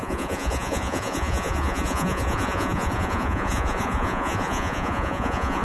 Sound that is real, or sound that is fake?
fake